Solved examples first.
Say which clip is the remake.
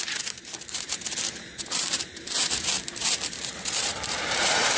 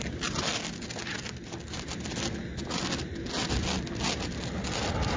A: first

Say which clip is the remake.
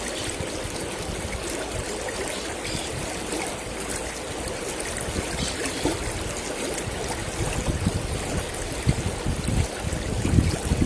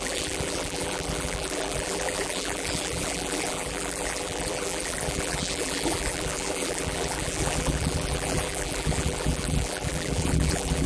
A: second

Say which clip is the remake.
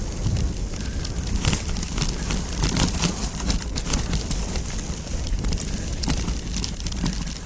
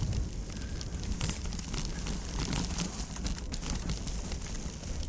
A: first